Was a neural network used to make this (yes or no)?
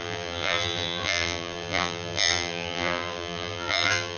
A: yes